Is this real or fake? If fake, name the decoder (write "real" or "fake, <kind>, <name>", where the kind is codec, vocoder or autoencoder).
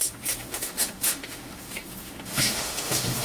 fake, autoencoder, DAC-VAE